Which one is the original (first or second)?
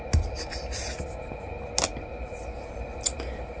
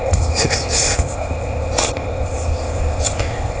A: first